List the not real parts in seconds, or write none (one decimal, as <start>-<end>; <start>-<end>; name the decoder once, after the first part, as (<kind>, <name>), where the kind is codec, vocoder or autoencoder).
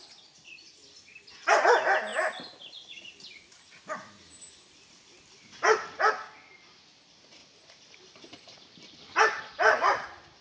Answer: 7.4-10.4 (vocoder, BigVGAN v2)